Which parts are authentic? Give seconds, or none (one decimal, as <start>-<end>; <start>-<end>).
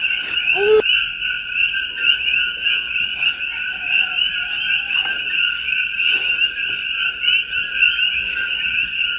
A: 0.0-2.3; 2.9-9.2